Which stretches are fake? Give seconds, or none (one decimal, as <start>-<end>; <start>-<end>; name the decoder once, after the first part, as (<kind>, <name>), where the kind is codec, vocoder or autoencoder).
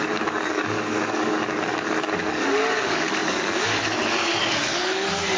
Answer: 0.0-5.4 (codec, DAC)